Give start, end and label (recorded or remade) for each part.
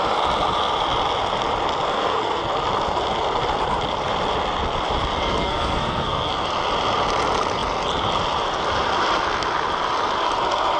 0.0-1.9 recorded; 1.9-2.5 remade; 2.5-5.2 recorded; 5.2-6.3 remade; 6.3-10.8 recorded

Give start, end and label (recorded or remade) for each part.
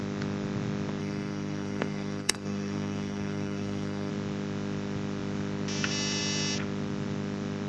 0.0-1.0 recorded; 1.0-4.1 remade; 4.1-7.7 recorded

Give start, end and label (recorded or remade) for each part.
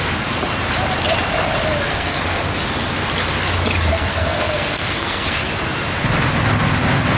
0.0-1.9 recorded; 1.9-2.4 remade; 2.4-3.9 recorded; 3.9-5.5 remade; 5.5-7.2 recorded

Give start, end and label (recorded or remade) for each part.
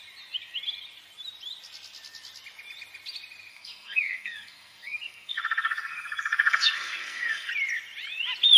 0.0-3.5 recorded; 3.5-7.5 remade; 7.5-8.6 recorded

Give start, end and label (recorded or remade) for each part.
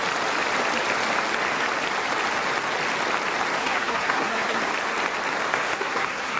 0.0-3.6 recorded; 3.6-4.6 remade; 4.6-5.5 recorded; 5.5-6.4 remade